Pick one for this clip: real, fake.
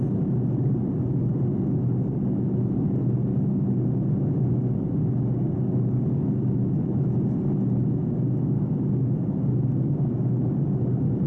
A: real